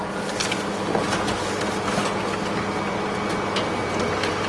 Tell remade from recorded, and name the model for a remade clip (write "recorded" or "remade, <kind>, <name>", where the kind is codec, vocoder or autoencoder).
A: recorded